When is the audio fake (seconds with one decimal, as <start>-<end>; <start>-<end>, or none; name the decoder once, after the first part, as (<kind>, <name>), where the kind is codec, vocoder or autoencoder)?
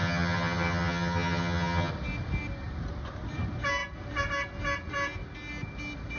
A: 0.0-1.9 (vocoder, HiFi-GAN)